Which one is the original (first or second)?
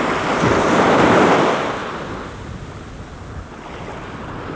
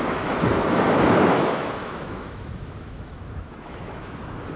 first